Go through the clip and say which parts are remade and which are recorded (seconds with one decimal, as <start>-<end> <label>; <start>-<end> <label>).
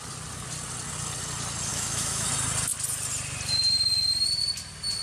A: 0.0-1.7 recorded; 1.7-2.3 remade; 2.3-5.0 recorded